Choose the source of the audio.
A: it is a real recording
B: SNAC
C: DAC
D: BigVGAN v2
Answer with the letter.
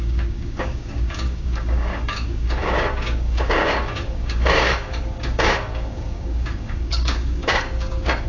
C